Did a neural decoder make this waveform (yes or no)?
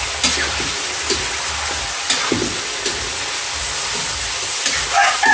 no